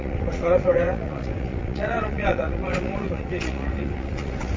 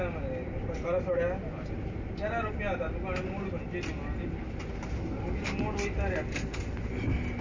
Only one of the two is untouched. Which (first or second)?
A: second